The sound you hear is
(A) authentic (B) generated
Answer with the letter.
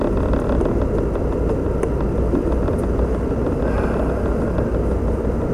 A